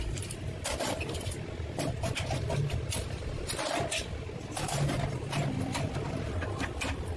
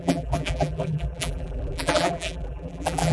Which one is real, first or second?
first